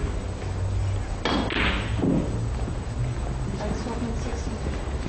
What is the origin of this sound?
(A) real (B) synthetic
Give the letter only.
A